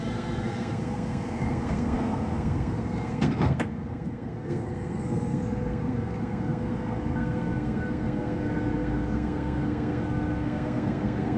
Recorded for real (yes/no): no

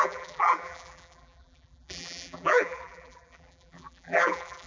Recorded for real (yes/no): no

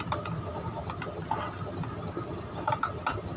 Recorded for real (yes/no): yes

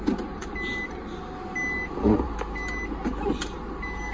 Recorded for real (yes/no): yes